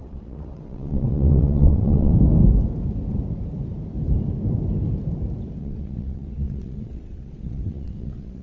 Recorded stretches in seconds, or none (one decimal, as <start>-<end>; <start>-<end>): 2.1-5.6